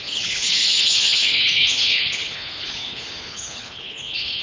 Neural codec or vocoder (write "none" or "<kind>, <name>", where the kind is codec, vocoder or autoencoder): codec, HILCodec